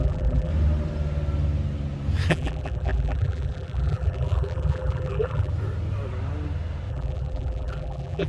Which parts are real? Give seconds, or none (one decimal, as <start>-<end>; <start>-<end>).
0.5-2.3; 5.5-6.9